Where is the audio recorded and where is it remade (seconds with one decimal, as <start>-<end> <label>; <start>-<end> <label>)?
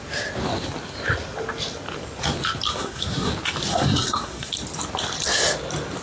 0.0-2.7 recorded; 2.7-3.3 remade; 3.3-3.7 recorded; 3.7-4.5 remade; 4.5-6.0 recorded